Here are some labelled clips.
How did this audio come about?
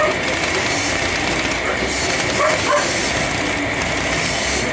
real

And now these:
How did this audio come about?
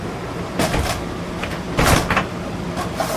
real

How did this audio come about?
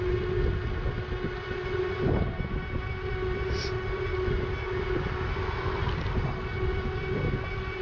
real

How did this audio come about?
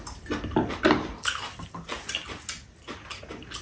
real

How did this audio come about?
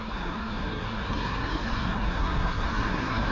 fake